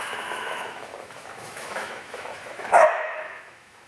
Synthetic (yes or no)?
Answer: yes